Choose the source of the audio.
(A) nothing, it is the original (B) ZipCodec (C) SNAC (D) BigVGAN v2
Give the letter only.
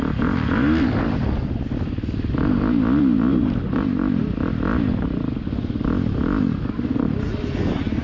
A